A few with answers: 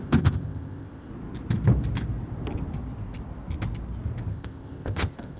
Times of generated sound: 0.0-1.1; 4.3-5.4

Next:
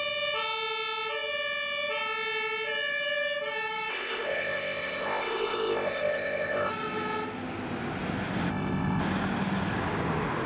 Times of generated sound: 3.9-6.7; 8.5-9.0